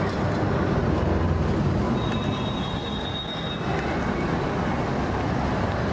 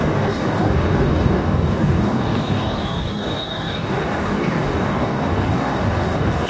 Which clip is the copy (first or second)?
second